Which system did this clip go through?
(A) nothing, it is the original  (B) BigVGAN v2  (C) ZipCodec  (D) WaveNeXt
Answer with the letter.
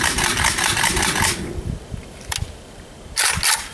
A